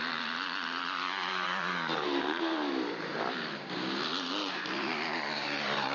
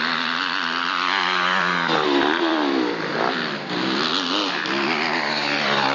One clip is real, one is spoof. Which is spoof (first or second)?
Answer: first